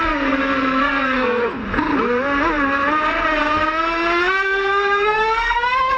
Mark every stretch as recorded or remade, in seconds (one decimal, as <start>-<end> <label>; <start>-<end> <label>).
0.0-1.6 remade; 1.6-4.3 recorded; 4.3-6.0 remade